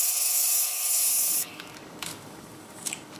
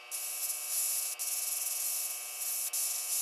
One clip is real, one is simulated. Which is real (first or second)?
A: second